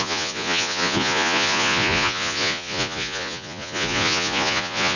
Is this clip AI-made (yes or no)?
yes